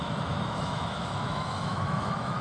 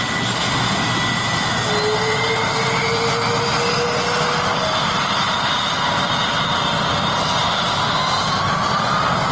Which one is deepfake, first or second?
first